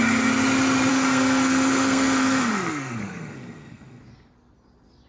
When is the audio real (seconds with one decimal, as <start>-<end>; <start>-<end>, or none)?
0.0-0.9; 4.0-5.1